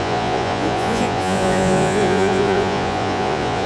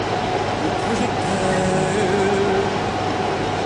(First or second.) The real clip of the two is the second